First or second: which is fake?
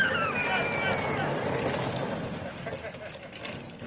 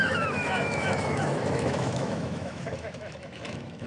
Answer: second